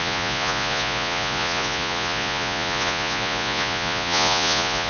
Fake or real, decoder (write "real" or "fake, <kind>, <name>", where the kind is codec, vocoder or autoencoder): fake, vocoder, Vocos